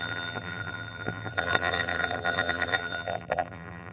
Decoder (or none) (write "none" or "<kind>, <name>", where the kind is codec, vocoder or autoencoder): vocoder, BigVGAN v2